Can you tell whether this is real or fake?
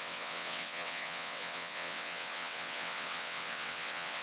fake